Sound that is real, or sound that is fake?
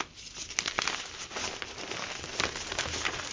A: real